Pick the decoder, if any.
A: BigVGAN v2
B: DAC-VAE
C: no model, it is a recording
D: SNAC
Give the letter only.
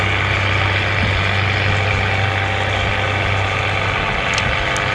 C